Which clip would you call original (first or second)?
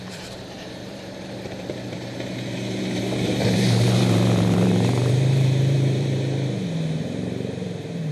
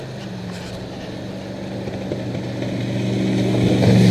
second